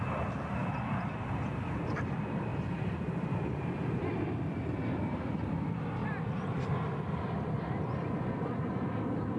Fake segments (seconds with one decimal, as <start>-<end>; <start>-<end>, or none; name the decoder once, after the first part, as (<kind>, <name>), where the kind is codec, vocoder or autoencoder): 0.0-9.4 (vocoder, BigVGAN v2)

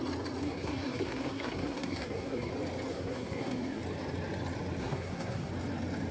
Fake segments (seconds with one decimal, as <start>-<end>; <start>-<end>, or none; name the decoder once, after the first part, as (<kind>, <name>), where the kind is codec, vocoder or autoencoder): 0.4-2.5 (codec, SNAC); 2.9-3.8; 4.8-5.5

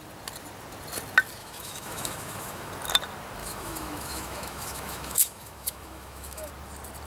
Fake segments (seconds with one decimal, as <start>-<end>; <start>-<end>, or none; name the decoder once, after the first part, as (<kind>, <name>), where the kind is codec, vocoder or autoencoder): 1.4-2.7 (autoencoder, DAC-VAE); 3.4-6.5

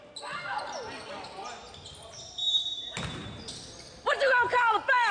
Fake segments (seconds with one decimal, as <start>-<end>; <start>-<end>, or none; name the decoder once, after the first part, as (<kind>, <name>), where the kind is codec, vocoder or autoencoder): none

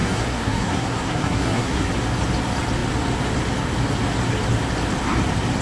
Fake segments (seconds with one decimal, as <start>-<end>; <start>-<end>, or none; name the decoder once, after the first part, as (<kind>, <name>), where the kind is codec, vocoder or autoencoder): 0.0-1.9 (codec, SNAC)

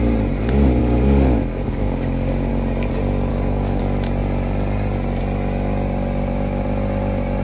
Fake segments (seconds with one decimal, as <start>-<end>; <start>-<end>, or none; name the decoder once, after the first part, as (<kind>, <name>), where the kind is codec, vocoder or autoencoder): 0.8-2.5 (codec, DAC); 3.3-3.8